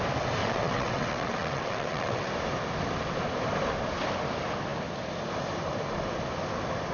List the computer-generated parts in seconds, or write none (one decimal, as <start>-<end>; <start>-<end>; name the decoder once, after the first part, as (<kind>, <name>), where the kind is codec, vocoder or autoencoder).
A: 0.4-2.3 (vocoder, WaveNeXt)